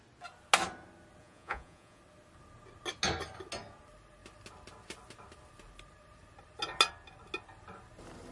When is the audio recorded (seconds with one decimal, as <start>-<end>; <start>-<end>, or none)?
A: 0.0-1.2; 2.0-8.3